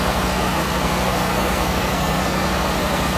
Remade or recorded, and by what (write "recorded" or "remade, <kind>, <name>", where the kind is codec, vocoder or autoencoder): remade, codec, SNAC